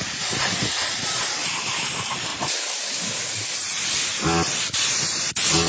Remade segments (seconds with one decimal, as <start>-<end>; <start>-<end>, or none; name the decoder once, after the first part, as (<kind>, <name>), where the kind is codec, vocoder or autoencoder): 2.3-5.3 (vocoder, BigVGAN v2)

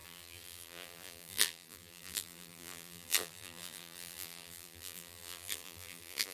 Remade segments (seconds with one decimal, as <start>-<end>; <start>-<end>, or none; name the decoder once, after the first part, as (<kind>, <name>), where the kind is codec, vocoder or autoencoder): 0.0-6.3 (vocoder, BigVGAN v2)

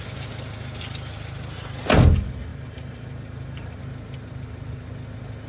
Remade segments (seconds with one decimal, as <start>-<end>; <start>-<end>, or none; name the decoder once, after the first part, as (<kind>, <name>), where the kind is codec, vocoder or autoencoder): 2.5-3.8 (vocoder, BigVGAN v2)

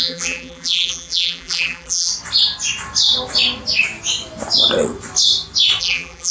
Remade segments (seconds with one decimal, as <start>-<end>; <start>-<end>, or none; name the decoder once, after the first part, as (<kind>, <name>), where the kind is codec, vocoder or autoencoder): 0.0-2.1 (vocoder, BigVGAN v2); 5.8-6.3

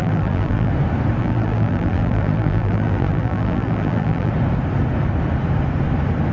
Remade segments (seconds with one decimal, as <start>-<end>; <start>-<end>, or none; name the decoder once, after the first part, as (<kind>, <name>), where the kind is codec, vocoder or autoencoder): 0.0-0.7 (vocoder, BigVGAN v2); 1.2-4.3